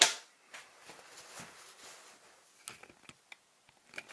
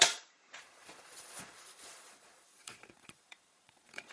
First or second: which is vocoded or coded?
second